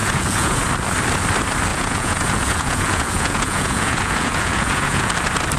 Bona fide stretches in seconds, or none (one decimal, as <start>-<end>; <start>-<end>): 0.6-1.7; 5.1-5.6